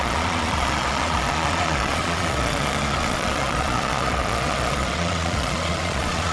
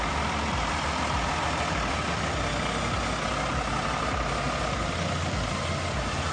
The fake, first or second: first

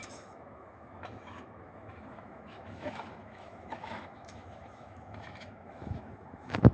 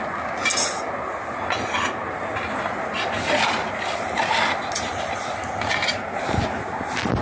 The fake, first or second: first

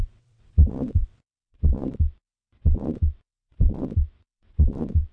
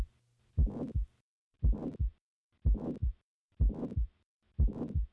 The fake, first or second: first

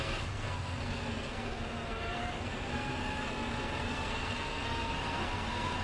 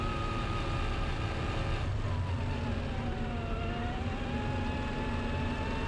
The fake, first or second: first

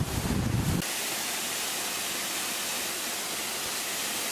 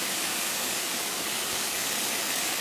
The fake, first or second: second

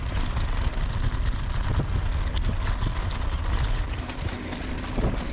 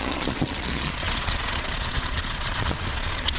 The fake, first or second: second